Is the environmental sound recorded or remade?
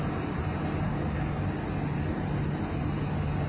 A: recorded